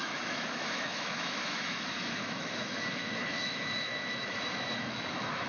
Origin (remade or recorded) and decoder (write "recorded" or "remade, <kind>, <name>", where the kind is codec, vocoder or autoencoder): remade, autoencoder, DAC-VAE